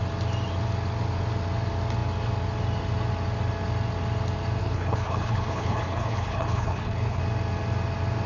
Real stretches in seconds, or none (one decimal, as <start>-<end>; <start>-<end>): 0.0-4.6; 7.2-8.3